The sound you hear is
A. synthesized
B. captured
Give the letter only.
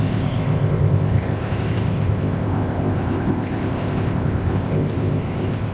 A